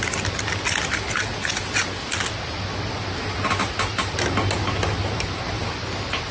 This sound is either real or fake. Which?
real